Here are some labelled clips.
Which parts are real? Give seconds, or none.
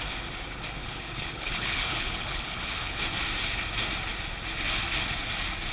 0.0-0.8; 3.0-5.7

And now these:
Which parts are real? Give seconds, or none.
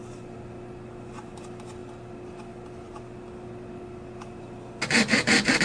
0.0-5.6